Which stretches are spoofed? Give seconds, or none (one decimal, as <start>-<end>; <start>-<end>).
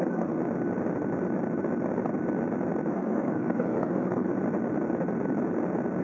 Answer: 0.0-0.4; 2.9-4.3